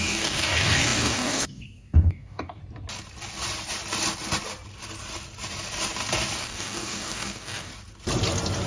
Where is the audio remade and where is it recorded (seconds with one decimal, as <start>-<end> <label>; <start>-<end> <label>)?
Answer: 0.0-2.6 remade; 2.6-6.4 recorded; 6.4-7.7 remade; 7.7-8.7 recorded